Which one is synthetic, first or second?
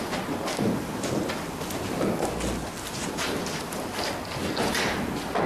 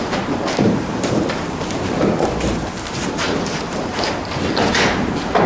second